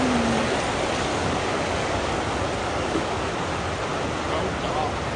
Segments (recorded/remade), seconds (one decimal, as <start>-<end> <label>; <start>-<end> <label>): 0.0-1.1 recorded; 1.1-2.2 remade; 2.2-2.6 recorded; 2.6-3.2 remade; 3.2-5.2 recorded